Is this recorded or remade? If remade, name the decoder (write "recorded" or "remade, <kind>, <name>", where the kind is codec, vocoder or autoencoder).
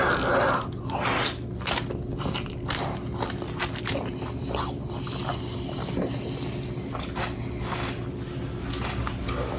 recorded